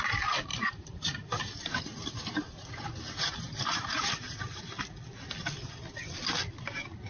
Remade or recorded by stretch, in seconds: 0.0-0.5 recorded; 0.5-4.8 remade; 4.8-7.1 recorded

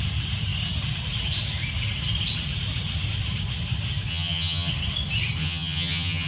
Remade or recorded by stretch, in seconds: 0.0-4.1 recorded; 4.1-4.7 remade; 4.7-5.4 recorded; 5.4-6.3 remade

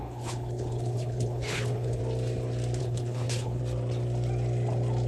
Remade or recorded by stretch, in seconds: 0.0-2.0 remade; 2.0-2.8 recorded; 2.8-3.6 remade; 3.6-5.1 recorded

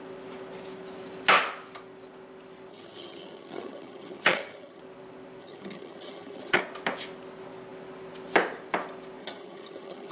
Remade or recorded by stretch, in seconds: 0.0-2.7 recorded; 2.7-4.8 remade; 4.8-5.4 recorded; 5.4-6.6 remade; 6.6-9.2 recorded; 9.2-10.1 remade

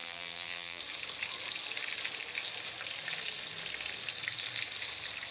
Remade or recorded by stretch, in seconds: 0.0-0.8 remade; 0.8-5.3 recorded

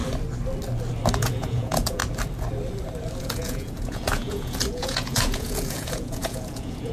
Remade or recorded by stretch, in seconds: 0.0-1.1 recorded; 1.1-2.0 remade; 2.0-3.2 recorded; 3.2-6.9 remade